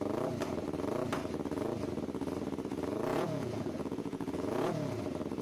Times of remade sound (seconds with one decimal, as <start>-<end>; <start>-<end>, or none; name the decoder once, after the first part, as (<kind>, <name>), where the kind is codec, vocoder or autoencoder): 3.1-5.0 (vocoder, Vocos)